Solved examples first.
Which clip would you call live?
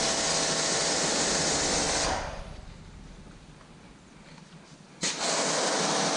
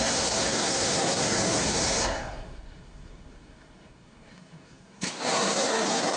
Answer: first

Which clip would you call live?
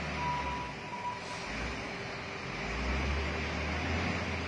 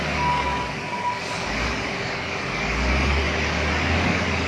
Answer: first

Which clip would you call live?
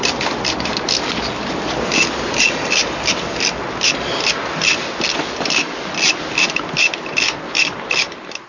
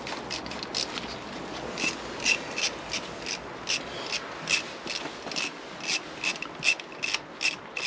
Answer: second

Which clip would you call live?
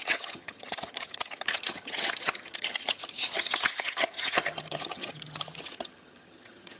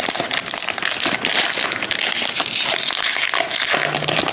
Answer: second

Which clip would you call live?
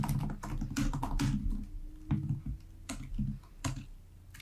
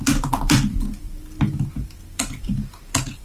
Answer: first